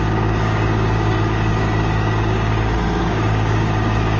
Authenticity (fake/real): fake